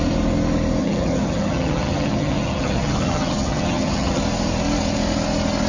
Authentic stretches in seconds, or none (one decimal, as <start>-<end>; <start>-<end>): 0.0-0.8; 4.2-5.7